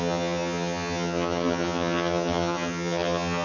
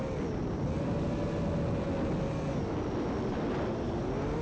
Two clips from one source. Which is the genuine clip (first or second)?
second